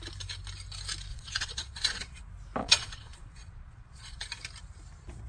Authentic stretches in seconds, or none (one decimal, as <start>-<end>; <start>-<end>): 0.0-1.1; 2.2-2.6; 4.2-5.3